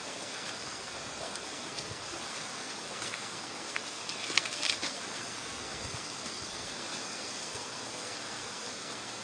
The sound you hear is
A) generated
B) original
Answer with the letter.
A